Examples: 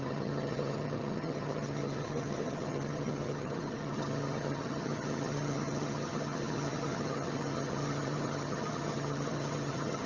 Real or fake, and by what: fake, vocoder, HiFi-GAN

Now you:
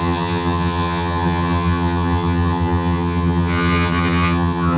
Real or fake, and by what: fake, vocoder, HiFi-GAN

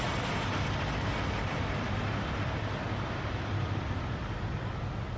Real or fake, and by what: real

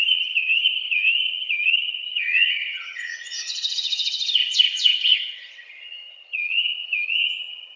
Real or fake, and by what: fake, vocoder, HiFi-GAN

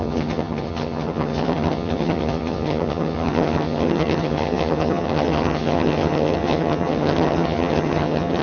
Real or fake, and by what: fake, vocoder, HiFi-GAN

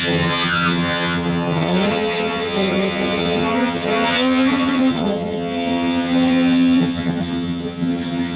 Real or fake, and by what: fake, vocoder, HiFi-GAN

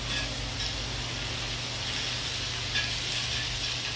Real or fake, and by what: real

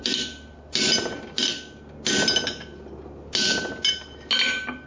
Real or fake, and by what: real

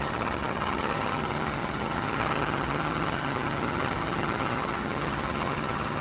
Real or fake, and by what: fake, vocoder, HiFi-GAN